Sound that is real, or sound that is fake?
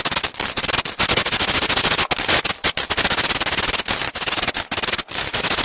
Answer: real